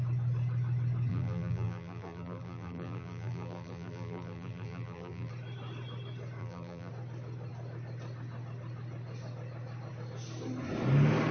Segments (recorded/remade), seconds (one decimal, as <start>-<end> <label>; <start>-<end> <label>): 0.0-1.1 recorded; 1.1-5.3 remade; 5.3-6.4 recorded; 6.4-6.9 remade; 6.9-11.3 recorded